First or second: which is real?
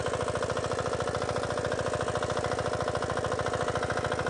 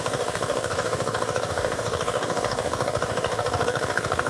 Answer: first